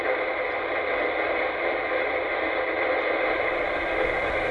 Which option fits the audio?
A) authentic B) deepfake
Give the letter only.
A